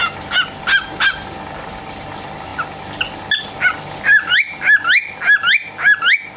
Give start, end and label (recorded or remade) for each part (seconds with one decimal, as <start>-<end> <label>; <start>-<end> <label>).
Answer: 0.0-6.4 recorded